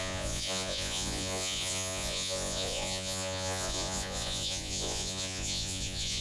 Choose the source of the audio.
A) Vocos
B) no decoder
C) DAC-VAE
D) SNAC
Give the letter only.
A